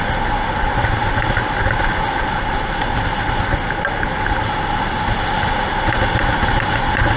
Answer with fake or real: real